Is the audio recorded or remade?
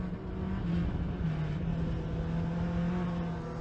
recorded